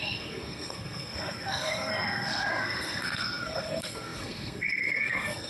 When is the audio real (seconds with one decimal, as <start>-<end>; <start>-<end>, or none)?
none